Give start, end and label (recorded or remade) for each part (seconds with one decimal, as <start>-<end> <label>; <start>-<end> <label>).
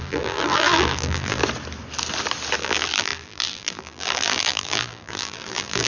0.0-1.4 remade; 1.4-2.6 recorded; 2.6-5.9 remade